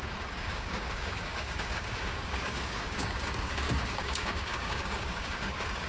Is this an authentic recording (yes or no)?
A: no